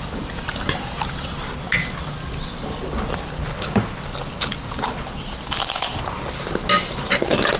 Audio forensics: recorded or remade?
recorded